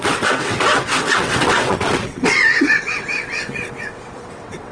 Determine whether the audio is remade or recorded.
remade